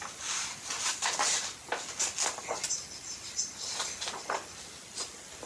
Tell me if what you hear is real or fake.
real